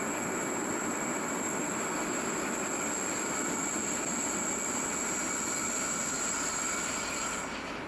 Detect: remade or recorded recorded